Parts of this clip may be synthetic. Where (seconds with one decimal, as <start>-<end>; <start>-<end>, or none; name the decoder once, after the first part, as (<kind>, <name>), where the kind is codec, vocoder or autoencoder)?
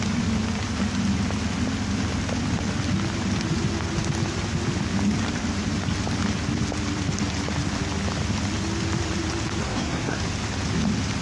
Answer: 9.6-10.2 (codec, SNAC)